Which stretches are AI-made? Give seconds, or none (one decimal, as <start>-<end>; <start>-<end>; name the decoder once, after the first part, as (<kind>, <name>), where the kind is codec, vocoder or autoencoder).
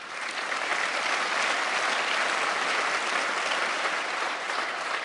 0.0-0.7 (vocoder, BigVGAN v2); 3.7-5.0